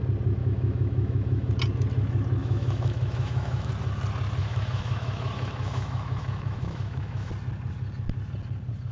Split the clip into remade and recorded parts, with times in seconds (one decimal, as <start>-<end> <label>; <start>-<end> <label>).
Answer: 0.0-0.4 recorded; 0.4-1.5 remade; 1.5-2.4 recorded; 2.4-3.7 remade; 3.7-4.4 recorded; 4.4-7.3 remade; 7.3-8.9 recorded